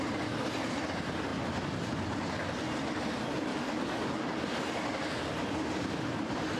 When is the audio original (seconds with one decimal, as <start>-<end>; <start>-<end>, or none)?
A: 0.0-3.5; 4.2-6.6